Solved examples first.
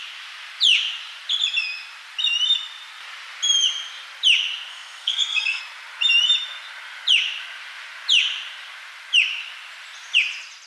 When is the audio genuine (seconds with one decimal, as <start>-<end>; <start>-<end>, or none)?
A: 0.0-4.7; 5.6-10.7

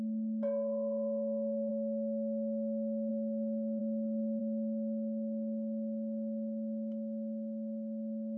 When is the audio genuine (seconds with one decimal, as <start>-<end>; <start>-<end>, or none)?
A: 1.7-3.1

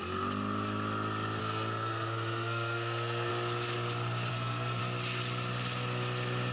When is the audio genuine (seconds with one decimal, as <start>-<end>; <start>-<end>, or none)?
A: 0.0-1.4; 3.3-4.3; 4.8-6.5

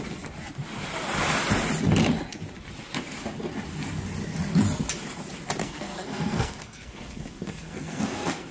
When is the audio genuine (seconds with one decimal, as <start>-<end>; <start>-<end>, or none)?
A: 0.0-5.6

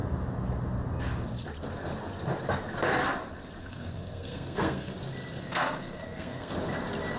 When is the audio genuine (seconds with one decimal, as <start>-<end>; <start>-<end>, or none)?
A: 0.0-3.6; 4.9-5.4; 6.5-7.2